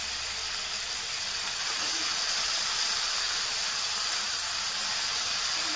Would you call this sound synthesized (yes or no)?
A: no